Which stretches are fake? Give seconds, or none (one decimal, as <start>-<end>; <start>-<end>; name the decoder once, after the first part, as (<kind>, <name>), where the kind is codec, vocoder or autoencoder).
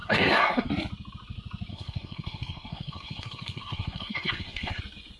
0.0-0.7 (codec, SNAC); 1.7-4.8